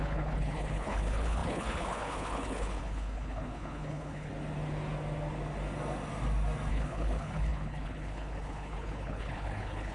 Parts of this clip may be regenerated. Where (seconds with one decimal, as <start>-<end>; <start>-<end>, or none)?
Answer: 0.0-4.3; 6.7-9.9